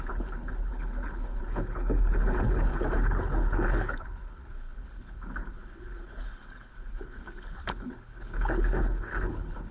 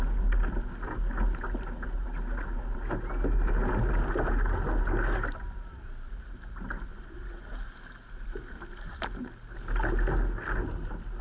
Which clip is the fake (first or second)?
first